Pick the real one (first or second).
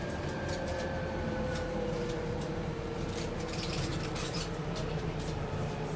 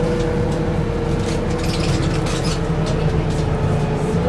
second